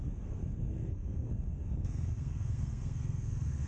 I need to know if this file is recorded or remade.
remade